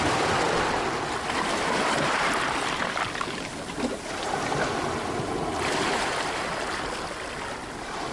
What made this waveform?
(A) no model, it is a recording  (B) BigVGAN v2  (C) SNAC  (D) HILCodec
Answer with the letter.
A